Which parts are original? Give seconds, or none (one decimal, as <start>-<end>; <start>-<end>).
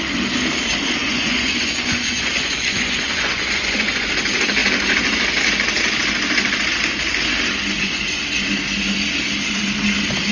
0.0-1.0; 4.1-7.7; 8.2-10.3